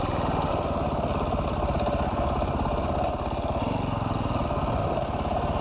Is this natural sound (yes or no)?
yes